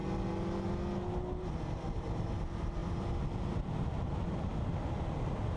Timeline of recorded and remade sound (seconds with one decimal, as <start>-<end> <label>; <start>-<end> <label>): 0.0-5.6 recorded